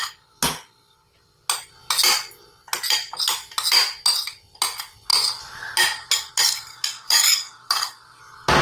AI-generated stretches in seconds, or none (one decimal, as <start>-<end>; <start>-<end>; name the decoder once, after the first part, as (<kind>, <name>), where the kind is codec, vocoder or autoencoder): 6.7-8.2 (codec, DAC)